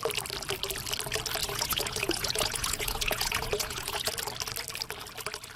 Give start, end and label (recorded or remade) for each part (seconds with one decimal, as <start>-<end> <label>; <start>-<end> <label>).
0.0-1.4 recorded; 1.4-4.1 remade; 4.1-5.6 recorded